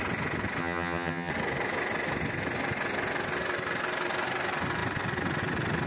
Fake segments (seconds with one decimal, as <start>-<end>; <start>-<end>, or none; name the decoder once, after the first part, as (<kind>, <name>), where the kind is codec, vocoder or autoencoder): 0.6-1.3 (vocoder, HiFi-GAN)